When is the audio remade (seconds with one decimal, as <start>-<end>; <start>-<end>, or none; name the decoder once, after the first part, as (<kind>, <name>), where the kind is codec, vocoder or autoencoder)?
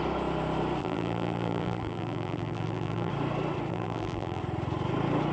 0.8-3.1 (vocoder, BigVGAN v2); 3.7-4.4